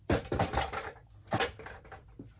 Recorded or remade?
recorded